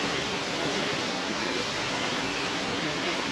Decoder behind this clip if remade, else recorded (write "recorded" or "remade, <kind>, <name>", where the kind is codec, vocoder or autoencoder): remade, codec, SNAC